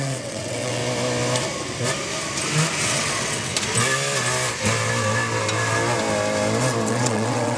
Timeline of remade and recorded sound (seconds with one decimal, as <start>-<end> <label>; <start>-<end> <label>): 0.0-0.8 remade; 0.8-2.8 recorded; 2.8-3.5 remade; 3.5-6.9 recorded; 6.9-7.6 remade